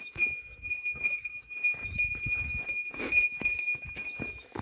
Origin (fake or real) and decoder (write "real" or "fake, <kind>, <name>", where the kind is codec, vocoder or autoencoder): fake, autoencoder, DAC-VAE